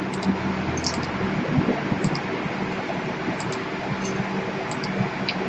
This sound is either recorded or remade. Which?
recorded